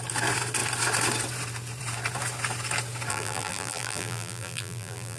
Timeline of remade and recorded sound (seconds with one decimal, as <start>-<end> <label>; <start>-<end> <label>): 0.0-3.1 recorded; 3.1-5.2 remade